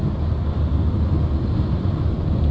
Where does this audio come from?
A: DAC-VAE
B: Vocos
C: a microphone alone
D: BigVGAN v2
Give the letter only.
C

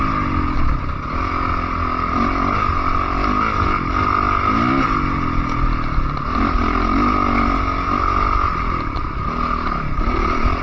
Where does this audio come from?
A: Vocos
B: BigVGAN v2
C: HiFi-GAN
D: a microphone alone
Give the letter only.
D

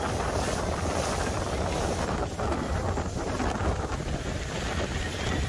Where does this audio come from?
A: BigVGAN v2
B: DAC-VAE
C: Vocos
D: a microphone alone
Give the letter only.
A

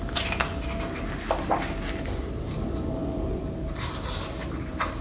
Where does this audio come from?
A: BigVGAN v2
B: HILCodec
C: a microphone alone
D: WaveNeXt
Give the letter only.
C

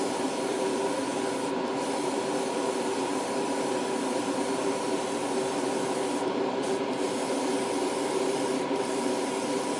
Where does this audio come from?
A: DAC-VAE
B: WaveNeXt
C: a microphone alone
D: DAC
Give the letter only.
C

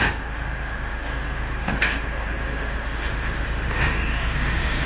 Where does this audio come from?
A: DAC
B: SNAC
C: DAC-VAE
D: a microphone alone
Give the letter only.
C